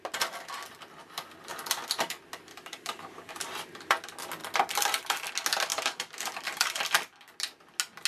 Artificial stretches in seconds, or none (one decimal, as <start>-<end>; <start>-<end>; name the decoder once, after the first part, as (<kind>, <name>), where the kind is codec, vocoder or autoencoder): 2.5-3.3 (codec, DAC); 5.7-6.8